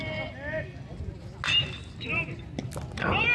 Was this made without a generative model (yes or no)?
yes